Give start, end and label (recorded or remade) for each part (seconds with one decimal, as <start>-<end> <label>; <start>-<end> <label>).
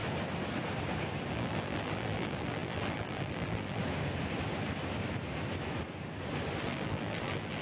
0.0-1.3 recorded; 1.3-3.8 remade; 3.8-6.6 recorded; 6.6-7.6 remade